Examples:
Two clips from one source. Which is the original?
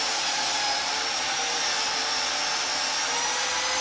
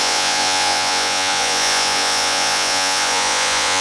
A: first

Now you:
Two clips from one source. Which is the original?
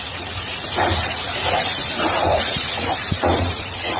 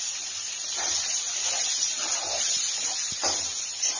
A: second